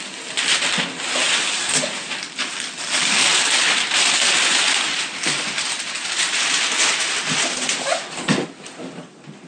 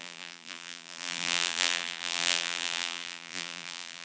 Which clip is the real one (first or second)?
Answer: first